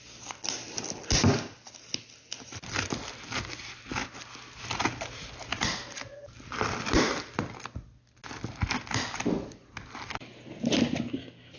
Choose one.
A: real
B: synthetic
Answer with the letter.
A